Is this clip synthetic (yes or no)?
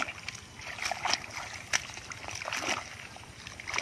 no